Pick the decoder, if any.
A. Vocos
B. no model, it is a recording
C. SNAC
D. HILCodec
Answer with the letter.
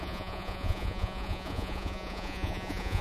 A